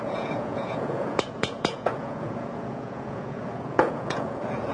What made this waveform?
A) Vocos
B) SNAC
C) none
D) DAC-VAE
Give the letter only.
A